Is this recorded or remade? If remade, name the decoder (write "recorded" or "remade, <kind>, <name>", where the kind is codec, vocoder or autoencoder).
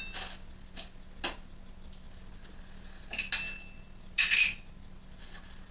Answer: recorded